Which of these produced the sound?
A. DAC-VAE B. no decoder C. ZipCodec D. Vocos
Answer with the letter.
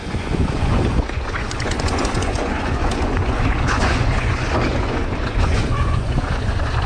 D